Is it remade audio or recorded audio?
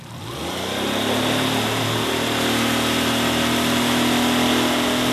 recorded